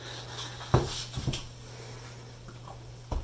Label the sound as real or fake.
real